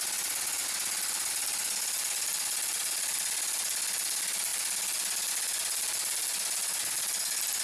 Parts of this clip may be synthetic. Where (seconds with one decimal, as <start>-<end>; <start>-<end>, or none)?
none